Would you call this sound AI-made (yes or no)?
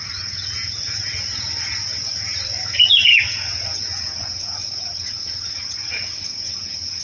yes